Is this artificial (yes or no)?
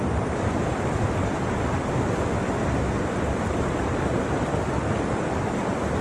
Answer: no